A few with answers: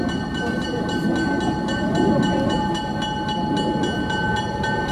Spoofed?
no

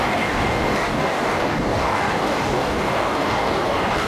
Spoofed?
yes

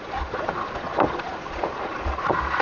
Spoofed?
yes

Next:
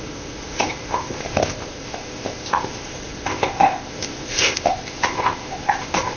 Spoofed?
yes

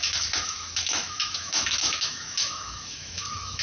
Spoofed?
yes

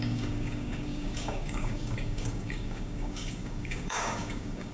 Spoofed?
yes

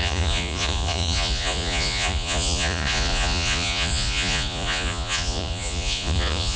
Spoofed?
yes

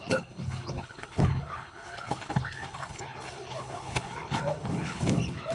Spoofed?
yes